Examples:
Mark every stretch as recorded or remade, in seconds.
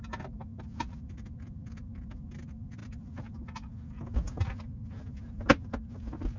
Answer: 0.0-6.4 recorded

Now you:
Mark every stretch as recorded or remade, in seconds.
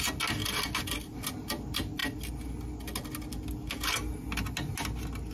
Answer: 0.0-5.3 recorded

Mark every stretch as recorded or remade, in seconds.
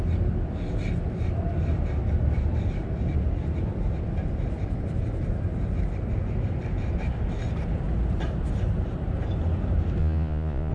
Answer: 0.0-10.0 recorded; 10.0-10.7 remade